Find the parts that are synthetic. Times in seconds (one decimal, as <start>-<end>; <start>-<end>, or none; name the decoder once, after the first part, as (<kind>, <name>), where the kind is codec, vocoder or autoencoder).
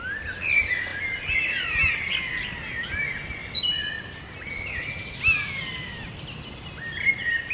none